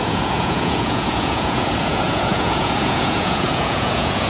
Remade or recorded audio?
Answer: remade